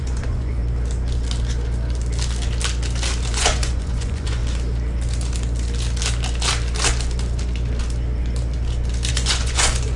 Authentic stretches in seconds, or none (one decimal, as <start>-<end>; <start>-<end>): 0.6-3.3; 4.4-9.1